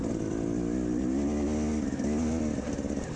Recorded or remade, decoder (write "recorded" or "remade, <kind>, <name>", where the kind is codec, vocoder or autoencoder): recorded